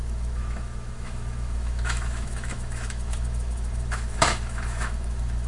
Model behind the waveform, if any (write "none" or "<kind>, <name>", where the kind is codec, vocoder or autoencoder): autoencoder, DAC-VAE